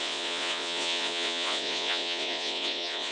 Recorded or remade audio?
remade